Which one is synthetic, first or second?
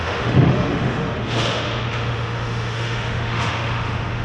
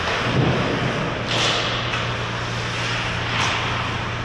first